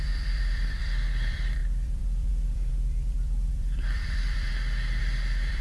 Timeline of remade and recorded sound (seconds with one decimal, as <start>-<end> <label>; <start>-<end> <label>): 0.0-4.5 remade; 4.5-5.0 recorded; 5.0-5.6 remade